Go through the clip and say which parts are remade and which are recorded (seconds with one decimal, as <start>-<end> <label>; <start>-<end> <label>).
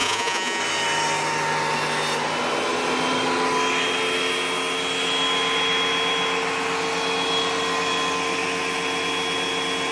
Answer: 0.0-0.6 remade; 0.6-9.9 recorded